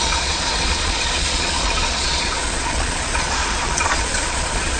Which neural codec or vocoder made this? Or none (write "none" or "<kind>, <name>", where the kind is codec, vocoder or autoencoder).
vocoder, Vocos